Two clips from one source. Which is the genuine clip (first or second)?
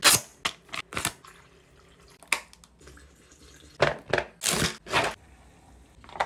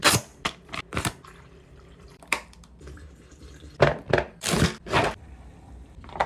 first